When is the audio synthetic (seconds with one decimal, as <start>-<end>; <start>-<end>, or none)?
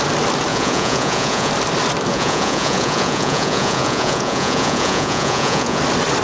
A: 0.5-1.5; 2.1-5.8